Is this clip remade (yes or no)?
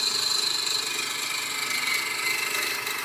no